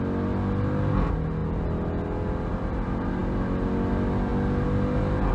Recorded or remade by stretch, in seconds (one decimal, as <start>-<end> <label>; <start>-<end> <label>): 0.0-5.3 recorded